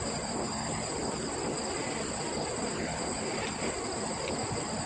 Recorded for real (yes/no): yes